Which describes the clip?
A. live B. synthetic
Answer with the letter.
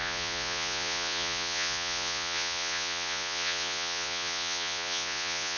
B